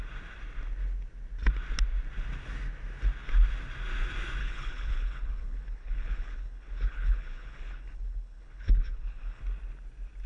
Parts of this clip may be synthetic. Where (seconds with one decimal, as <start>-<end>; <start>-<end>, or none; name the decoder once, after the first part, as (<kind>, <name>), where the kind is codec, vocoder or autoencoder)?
4.4-9.4 (codec, HILCodec)